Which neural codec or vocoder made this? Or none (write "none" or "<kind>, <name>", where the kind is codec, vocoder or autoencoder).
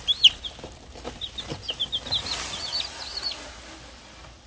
none